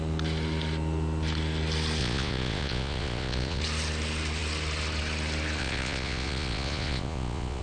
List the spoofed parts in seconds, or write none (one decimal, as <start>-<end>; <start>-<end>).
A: 2.0-3.6; 5.6-7.6